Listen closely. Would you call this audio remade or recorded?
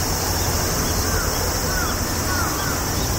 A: recorded